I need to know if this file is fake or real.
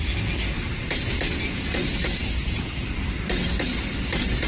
real